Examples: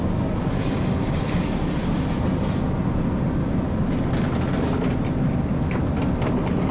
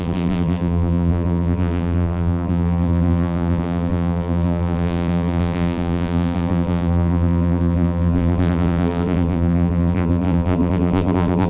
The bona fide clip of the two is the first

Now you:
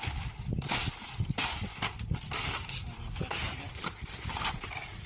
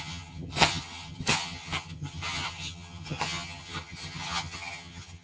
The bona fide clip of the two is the first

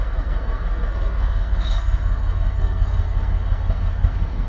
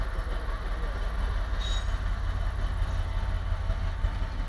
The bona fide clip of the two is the second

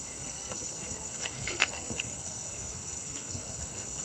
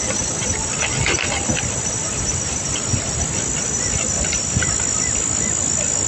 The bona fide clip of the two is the second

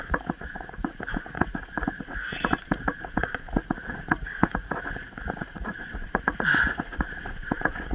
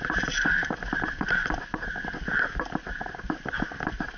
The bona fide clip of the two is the second